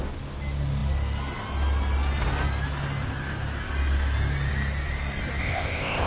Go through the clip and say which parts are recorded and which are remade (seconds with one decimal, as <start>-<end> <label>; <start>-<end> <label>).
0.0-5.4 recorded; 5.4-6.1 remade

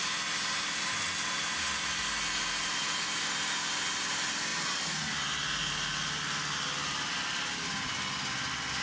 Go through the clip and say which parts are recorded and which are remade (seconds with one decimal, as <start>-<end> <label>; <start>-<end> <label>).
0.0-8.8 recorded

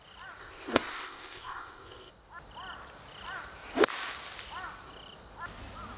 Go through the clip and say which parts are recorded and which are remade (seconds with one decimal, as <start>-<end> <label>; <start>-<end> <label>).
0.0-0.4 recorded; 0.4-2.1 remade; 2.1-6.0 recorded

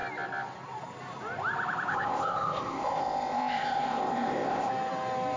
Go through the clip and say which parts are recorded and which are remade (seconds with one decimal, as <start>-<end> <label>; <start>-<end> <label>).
0.0-1.9 recorded; 1.9-4.7 remade; 4.7-5.4 recorded

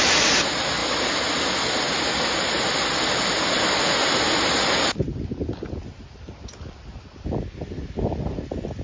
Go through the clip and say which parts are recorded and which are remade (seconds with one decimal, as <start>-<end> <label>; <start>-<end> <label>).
0.0-8.8 recorded

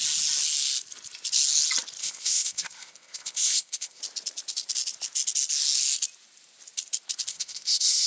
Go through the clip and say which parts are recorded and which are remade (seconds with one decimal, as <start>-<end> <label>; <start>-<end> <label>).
0.0-2.0 recorded; 2.0-4.0 remade; 4.0-7.3 recorded; 7.3-8.1 remade

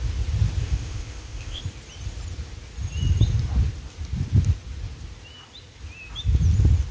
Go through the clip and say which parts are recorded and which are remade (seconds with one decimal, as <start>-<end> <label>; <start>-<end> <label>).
0.0-0.6 recorded; 0.6-1.6 remade; 1.6-6.9 recorded

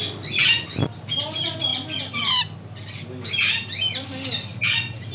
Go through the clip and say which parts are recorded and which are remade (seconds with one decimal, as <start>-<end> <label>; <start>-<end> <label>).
0.0-5.1 recorded